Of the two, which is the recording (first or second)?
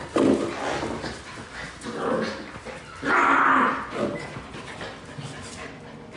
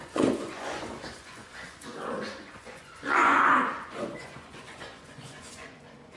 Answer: first